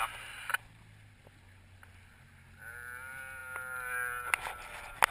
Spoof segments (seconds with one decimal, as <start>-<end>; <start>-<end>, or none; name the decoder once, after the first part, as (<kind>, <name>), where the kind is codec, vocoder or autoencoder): none